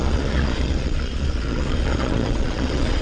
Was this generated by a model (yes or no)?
yes